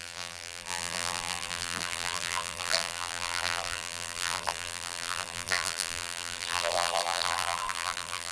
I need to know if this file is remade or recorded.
remade